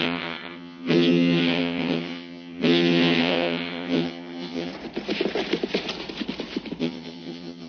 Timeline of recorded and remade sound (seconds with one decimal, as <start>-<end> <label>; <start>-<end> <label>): 0.0-4.7 remade; 4.7-6.8 recorded; 6.8-7.7 remade